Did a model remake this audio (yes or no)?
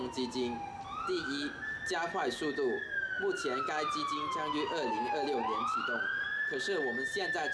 no